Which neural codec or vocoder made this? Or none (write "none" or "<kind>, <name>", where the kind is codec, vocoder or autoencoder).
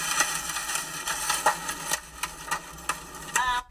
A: none